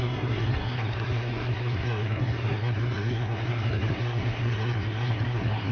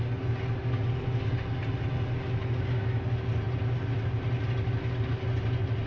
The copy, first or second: first